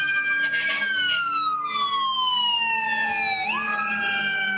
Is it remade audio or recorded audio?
recorded